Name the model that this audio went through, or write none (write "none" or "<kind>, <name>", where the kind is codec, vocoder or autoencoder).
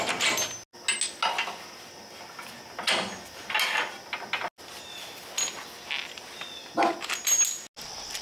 none